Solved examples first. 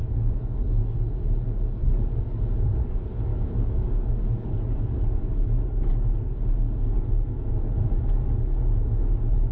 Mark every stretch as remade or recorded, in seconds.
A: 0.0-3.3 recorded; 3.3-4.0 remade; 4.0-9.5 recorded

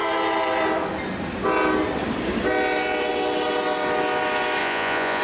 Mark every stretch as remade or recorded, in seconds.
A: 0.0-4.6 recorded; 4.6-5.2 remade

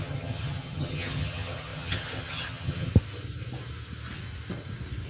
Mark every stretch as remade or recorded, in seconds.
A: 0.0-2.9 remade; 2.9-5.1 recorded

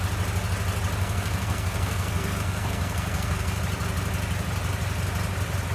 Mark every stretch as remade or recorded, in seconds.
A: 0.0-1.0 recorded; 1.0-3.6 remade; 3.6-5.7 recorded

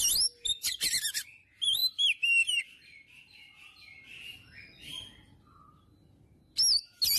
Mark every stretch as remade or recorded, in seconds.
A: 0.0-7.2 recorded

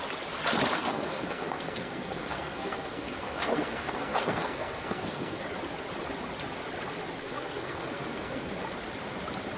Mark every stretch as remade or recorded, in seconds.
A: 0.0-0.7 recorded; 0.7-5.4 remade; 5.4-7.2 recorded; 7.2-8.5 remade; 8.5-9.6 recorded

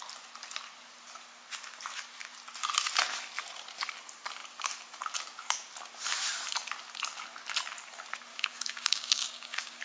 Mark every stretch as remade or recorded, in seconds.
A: 0.0-8.3 recorded; 8.3-9.8 remade

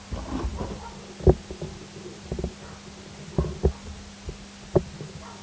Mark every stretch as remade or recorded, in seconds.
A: 0.0-5.4 recorded